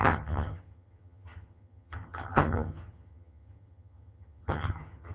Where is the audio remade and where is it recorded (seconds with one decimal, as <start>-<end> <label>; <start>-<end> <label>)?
0.0-5.1 remade